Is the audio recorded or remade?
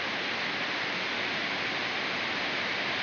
recorded